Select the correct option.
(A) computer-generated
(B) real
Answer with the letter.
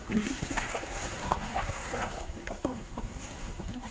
A